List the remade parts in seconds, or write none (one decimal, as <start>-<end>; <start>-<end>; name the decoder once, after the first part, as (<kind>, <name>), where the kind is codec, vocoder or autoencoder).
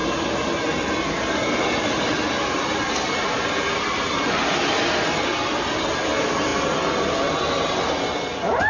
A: none